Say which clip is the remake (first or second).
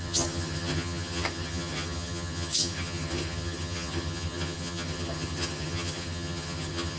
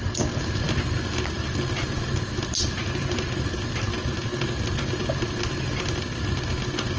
first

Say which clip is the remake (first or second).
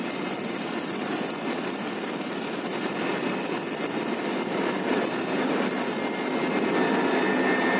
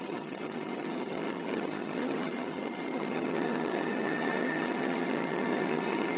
second